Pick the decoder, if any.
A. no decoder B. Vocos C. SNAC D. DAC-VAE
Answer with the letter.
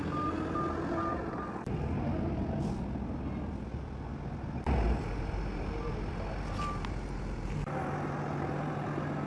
A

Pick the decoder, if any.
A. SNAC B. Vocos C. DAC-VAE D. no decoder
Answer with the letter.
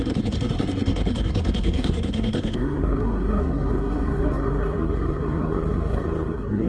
A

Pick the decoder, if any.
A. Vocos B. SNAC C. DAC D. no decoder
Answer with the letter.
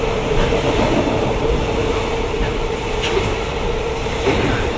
D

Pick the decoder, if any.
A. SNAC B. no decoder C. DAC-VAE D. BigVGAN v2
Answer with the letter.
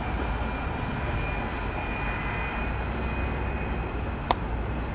B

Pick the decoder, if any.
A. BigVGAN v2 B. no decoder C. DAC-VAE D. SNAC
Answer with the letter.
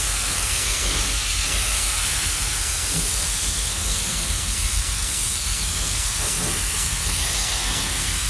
D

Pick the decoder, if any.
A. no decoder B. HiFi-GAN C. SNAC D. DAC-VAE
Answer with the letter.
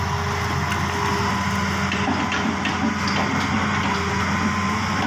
A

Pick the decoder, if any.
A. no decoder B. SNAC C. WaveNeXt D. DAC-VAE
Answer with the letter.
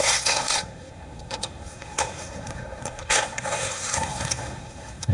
B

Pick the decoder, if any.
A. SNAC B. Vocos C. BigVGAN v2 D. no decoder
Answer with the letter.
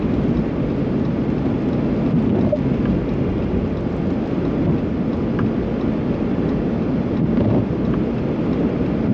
D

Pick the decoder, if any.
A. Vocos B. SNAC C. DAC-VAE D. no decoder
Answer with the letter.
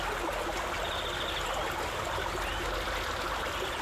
D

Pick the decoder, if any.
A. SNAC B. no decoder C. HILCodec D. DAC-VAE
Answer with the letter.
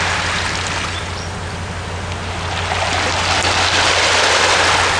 B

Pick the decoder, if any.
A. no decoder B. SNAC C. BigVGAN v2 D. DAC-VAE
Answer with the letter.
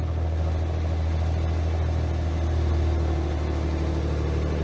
A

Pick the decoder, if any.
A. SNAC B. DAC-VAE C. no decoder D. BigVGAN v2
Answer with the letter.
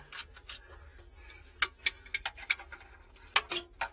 C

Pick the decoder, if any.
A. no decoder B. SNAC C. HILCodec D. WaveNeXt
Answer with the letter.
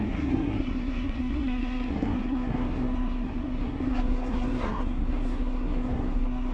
B